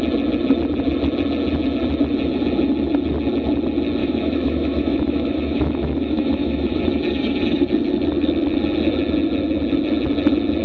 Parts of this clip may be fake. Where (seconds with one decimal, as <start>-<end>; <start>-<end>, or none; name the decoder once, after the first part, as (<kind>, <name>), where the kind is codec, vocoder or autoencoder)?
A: 4.0-6.8 (autoencoder, DAC-VAE)